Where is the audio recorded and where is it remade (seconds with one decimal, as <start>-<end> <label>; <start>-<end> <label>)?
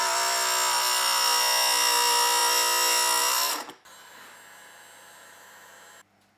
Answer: 0.0-6.4 recorded